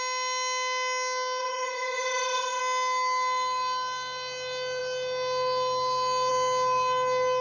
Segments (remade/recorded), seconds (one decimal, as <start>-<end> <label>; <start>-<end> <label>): 0.0-1.4 recorded; 1.4-2.6 remade; 2.6-7.4 recorded